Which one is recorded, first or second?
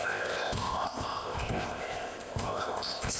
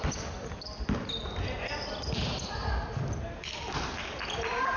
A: second